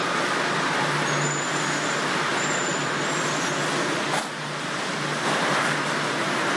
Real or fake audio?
real